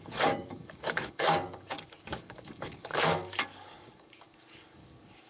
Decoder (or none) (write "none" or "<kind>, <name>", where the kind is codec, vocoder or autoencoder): codec, DAC